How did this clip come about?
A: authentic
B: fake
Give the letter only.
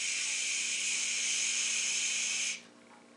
A